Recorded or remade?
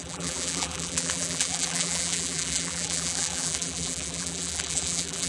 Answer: remade